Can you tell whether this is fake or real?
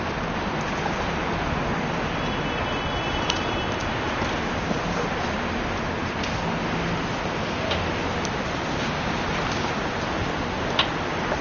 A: real